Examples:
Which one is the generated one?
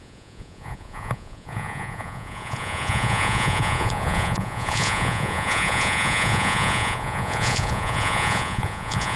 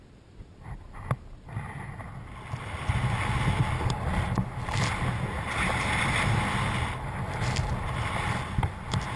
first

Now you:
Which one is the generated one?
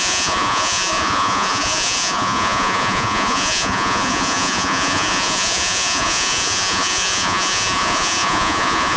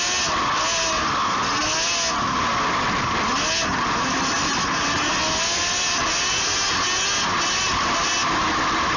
first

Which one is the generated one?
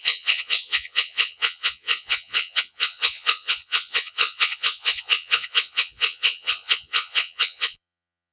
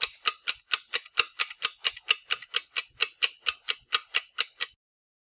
first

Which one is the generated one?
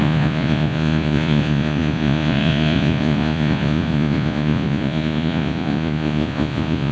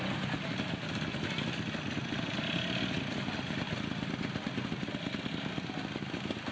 first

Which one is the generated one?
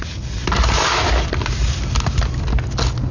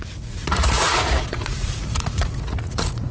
second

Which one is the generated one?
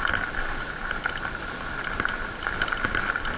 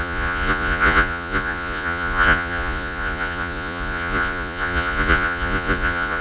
second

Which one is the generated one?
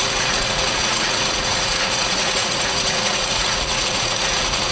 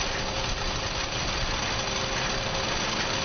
first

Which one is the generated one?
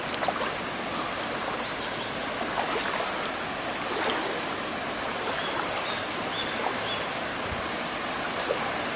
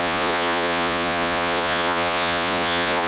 second